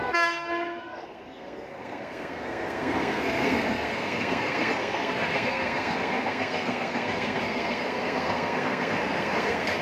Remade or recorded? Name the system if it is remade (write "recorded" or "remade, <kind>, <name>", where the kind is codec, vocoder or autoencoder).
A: remade, codec, SNAC